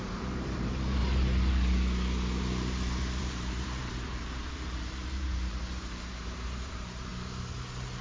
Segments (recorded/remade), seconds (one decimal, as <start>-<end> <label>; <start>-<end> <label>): 0.0-1.0 remade; 1.0-3.2 recorded; 3.2-7.1 remade; 7.1-8.0 recorded